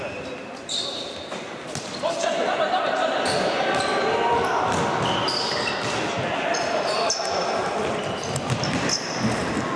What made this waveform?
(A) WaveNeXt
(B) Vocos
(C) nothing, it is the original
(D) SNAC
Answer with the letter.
C